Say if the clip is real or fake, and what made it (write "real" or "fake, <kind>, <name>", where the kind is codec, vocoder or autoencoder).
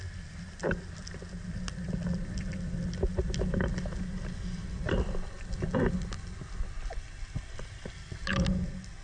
real